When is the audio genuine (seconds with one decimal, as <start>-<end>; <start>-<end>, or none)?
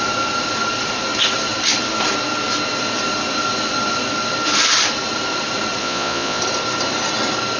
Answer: 0.0-5.8; 6.4-7.6